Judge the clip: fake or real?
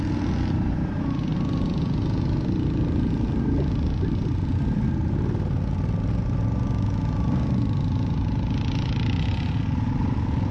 real